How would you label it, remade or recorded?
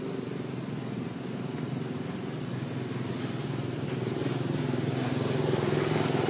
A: recorded